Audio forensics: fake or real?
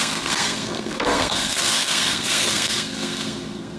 fake